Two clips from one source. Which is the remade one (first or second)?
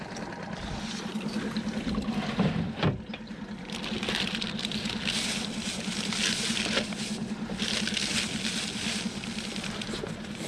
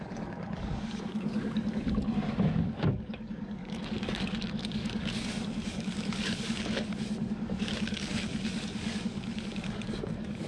second